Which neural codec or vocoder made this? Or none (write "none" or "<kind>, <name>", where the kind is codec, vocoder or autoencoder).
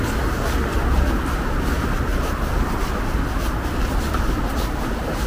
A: none